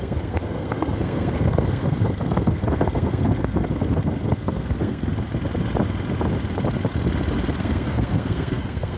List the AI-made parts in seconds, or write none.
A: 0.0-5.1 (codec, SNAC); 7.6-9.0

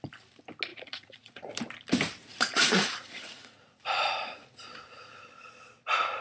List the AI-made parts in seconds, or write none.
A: 0.7-1.5 (vocoder, Vocos); 2.2-5.2

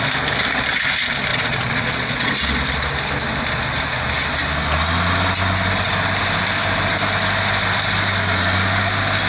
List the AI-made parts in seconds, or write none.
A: 1.3-2.3 (vocoder, Vocos)

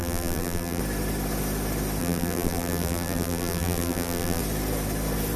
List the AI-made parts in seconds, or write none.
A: 0.0-0.8 (vocoder, BigVGAN v2); 2.0-4.4

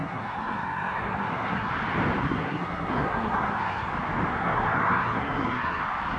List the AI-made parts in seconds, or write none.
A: 0.0-1.7 (codec, SNAC); 2.2-3.9; 4.3-5.8

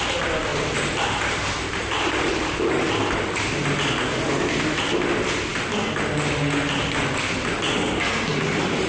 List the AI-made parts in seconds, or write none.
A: 0.5-3.0 (vocoder, BigVGAN v2); 8.3-8.9

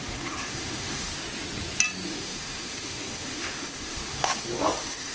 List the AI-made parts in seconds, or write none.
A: 0.0-1.1 (autoencoder, DAC-VAE); 2.1-5.1

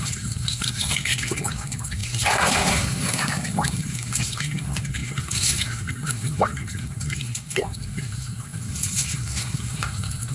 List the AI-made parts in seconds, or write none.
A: 0.0-10.3 (codec, SNAC)